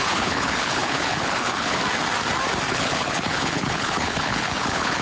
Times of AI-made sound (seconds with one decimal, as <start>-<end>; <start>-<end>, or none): 0.0-1.8; 2.7-5.0